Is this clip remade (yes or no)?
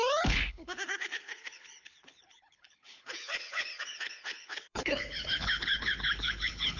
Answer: yes